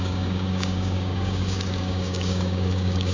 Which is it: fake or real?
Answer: fake